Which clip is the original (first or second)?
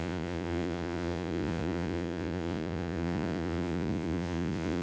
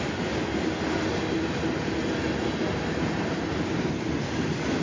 second